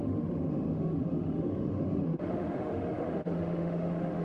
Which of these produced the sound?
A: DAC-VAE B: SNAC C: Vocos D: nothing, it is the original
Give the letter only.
A